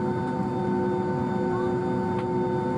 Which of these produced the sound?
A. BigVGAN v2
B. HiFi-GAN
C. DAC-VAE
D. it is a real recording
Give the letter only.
D